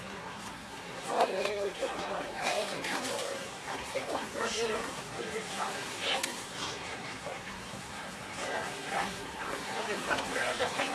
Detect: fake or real fake